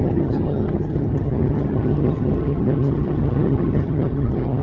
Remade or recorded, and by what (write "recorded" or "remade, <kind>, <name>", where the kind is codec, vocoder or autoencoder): remade, vocoder, HiFi-GAN